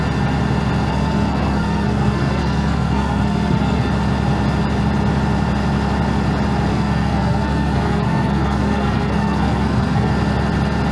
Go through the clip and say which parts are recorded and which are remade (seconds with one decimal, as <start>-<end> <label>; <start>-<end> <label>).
0.0-0.9 recorded; 0.9-3.9 remade; 3.9-6.7 recorded; 6.7-10.1 remade; 10.1-10.9 recorded